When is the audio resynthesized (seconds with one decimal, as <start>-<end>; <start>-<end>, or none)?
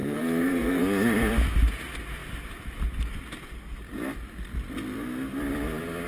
0.0-0.8